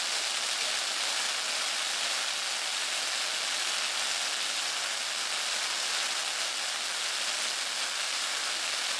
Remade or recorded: recorded